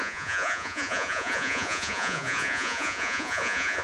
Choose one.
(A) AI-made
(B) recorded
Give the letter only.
A